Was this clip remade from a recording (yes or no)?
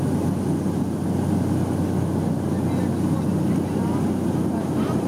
no